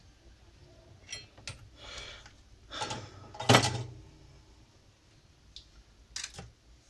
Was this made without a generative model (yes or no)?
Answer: yes